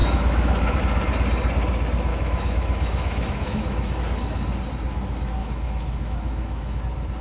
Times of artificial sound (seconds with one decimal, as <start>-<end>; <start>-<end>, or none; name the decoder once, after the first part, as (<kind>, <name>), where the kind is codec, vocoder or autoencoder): 0.0-0.8 (autoencoder, DAC-VAE); 2.1-4.0; 5.4-6.8